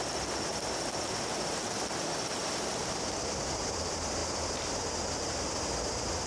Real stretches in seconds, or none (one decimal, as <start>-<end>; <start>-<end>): 0.0-6.3